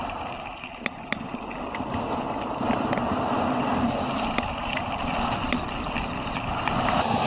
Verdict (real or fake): real